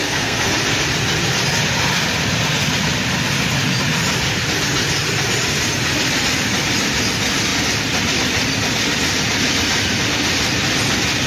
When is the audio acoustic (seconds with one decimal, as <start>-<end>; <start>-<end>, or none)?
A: 0.5-11.3